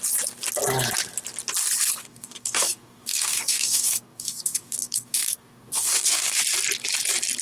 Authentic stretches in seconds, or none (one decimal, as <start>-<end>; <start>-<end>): 0.0-2.0; 6.4-7.4